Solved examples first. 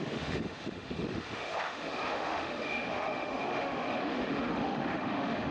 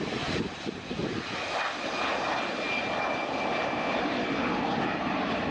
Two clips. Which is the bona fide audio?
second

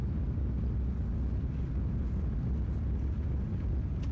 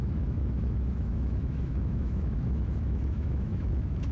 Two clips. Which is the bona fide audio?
first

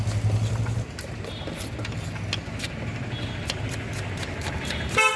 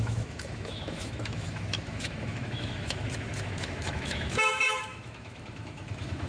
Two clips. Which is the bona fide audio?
first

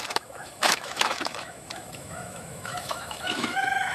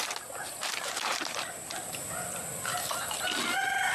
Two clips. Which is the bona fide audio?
second